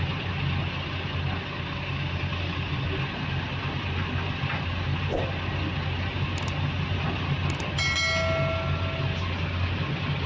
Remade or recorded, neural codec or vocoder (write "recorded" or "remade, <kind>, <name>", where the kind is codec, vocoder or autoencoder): recorded